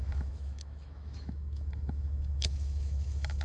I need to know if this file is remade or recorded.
remade